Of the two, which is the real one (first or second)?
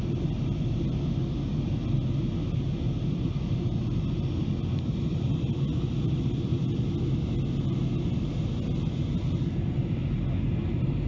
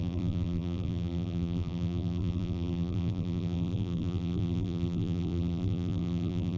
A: first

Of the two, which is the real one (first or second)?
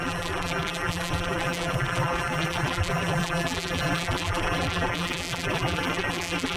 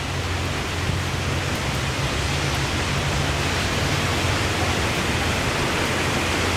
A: second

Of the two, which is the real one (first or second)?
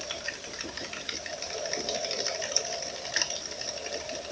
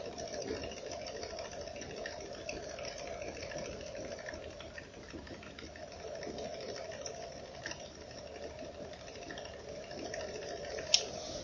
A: second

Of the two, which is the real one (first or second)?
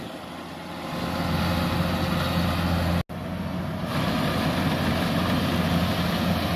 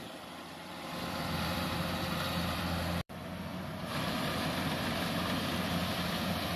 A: first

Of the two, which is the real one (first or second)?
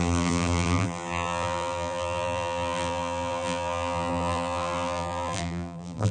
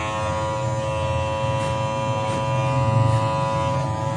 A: second